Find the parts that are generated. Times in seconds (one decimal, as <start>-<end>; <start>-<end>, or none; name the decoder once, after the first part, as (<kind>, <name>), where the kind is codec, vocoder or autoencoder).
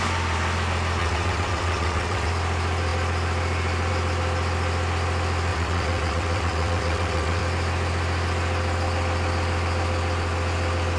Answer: 1.0-2.3 (vocoder, WaveNeXt); 5.5-7.4